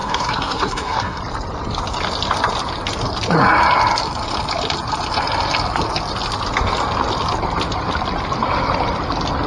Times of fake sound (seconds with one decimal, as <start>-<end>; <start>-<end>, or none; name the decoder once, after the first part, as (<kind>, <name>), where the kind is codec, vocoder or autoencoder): 0.0-1.2 (codec, SNAC)